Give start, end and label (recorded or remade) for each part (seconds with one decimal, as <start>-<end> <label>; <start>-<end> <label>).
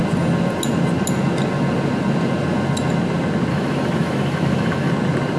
0.0-3.5 recorded; 3.5-4.9 remade; 4.9-5.4 recorded